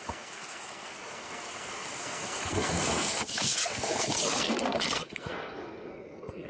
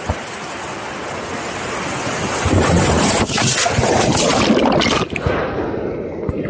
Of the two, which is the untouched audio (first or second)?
second